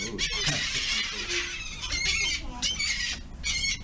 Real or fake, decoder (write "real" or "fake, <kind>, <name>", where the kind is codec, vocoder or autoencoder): real